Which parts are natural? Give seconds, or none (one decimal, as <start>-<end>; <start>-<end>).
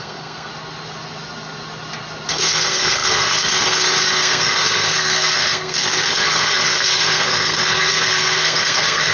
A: 0.5-2.3